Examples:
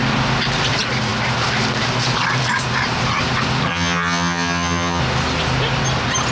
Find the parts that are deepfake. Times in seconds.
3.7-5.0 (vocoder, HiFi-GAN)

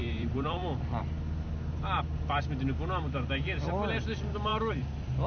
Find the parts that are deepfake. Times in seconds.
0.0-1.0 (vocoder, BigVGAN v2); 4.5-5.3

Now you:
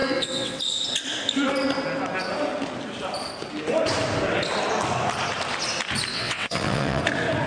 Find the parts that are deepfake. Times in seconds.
0.0-0.6 (vocoder, WaveNeXt); 6.1-7.0

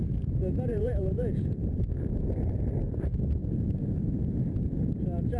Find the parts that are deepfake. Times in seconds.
0.7-1.8 (vocoder, Vocos); 3.4-4.0